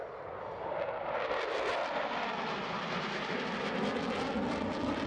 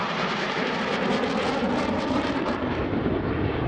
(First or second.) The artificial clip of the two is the second